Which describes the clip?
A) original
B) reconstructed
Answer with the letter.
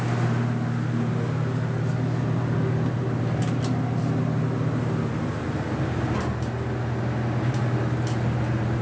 A